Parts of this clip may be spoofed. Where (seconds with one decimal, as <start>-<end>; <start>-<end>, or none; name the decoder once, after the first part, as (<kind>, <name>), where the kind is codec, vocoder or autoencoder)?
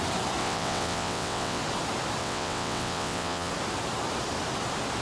0.4-1.6 (vocoder, WaveNeXt); 2.2-3.5